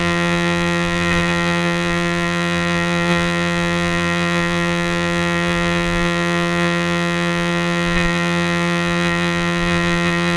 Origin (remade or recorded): remade